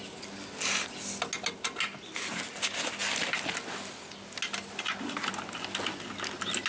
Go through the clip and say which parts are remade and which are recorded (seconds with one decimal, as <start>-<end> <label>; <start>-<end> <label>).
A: 0.0-6.7 recorded